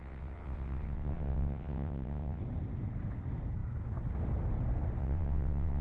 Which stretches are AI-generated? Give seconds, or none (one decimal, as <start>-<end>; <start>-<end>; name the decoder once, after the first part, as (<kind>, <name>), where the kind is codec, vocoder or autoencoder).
0.0-2.4 (vocoder, WaveNeXt); 5.0-5.8